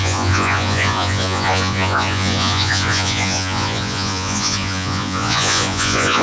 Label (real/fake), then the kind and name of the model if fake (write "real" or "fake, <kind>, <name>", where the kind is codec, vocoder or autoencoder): fake, vocoder, Vocos